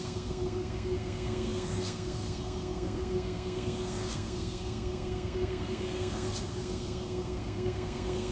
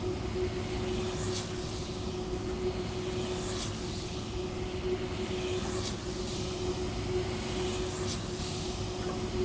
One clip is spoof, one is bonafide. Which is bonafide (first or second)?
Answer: second